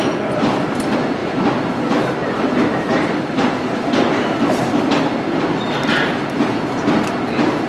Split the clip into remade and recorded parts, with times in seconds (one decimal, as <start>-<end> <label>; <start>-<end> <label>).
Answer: 0.0-1.2 recorded; 1.2-1.7 remade; 1.7-2.2 recorded; 2.2-5.4 remade; 5.4-7.7 recorded